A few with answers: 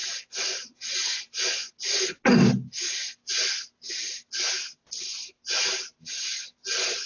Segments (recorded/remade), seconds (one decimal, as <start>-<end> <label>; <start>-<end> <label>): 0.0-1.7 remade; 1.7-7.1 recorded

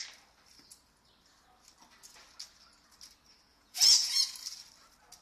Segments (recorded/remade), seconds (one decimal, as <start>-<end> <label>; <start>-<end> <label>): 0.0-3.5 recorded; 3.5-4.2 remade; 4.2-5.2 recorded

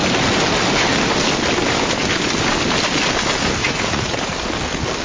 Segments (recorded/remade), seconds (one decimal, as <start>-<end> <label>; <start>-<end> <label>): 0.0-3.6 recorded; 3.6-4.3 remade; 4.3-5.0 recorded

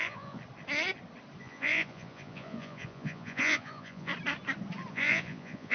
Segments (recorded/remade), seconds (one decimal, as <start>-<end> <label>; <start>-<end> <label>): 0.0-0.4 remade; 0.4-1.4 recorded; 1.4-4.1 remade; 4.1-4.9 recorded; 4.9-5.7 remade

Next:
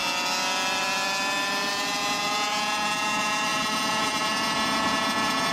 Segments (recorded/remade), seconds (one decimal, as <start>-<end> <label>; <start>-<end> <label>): 0.0-1.7 recorded; 1.7-5.5 remade